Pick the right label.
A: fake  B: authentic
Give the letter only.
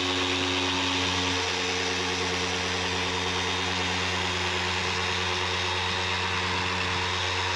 B